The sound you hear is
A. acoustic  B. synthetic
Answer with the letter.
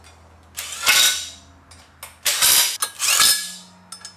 A